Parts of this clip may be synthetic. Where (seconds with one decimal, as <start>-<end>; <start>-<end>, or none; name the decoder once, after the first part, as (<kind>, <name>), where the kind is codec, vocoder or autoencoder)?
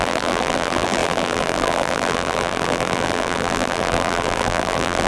0.0-5.1 (vocoder, BigVGAN v2)